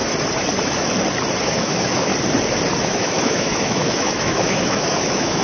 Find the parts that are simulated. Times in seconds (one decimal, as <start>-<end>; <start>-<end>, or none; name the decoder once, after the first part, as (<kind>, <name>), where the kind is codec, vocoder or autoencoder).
1.4-2.1 (autoencoder, DAC-VAE); 2.8-5.4